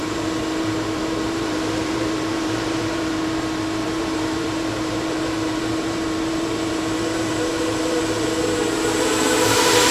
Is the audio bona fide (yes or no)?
no